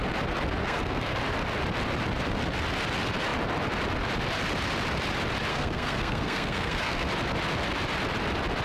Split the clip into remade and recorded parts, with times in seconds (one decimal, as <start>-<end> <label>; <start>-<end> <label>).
0.0-0.6 recorded; 0.6-1.2 remade; 1.2-5.5 recorded; 5.5-7.1 remade; 7.1-8.6 recorded